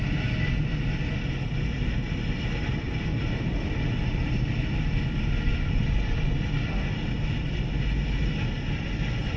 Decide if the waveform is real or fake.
real